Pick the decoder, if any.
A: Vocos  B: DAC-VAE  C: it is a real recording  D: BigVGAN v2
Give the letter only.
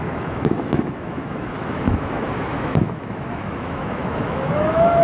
B